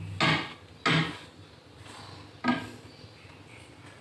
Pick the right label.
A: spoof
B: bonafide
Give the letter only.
B